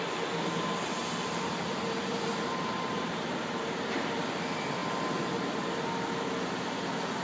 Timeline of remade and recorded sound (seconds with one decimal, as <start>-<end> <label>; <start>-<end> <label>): 0.0-1.0 recorded; 1.0-4.2 remade; 4.2-7.2 recorded